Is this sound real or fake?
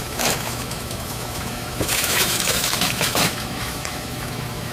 fake